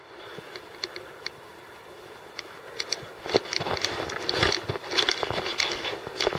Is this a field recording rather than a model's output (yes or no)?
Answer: yes